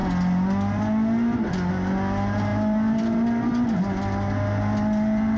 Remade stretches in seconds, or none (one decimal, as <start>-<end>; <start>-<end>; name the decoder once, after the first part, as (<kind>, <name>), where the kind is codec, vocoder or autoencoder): none